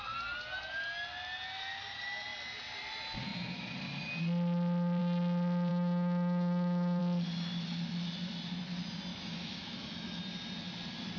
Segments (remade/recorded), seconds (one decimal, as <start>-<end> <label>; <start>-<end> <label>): 0.0-5.7 recorded; 5.7-7.0 remade; 7.0-9.1 recorded; 9.1-10.2 remade; 10.2-11.2 recorded